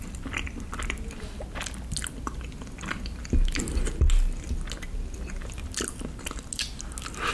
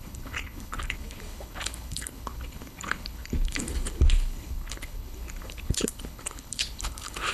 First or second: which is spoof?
second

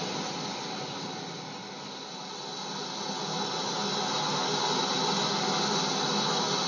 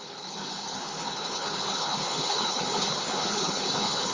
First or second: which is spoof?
second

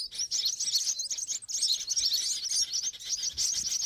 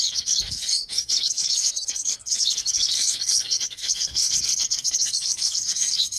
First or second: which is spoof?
second